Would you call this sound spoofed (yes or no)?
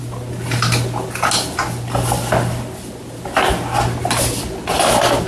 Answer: no